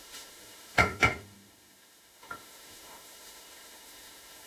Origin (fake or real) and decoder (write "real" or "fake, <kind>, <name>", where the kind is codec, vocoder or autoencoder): fake, autoencoder, DAC-VAE